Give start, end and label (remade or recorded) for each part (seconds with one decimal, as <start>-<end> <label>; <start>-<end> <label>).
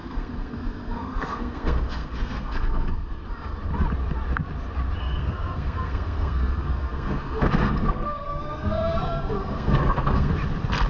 0.0-3.3 remade; 3.3-5.0 recorded; 5.0-10.3 remade; 10.3-10.9 recorded